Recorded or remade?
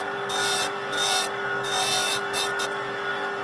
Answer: recorded